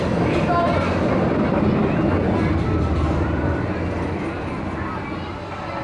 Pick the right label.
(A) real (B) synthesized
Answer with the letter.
A